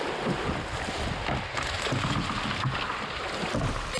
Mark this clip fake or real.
real